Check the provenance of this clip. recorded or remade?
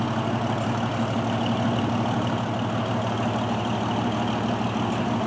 recorded